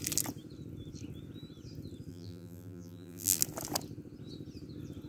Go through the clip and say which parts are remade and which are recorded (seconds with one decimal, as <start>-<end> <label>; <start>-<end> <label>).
0.0-2.1 recorded; 2.1-3.4 remade; 3.4-5.1 recorded